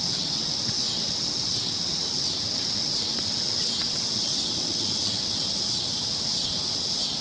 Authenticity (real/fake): fake